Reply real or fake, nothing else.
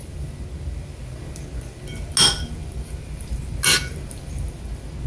real